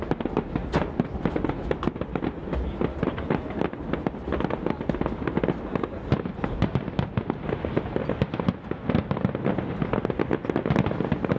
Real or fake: real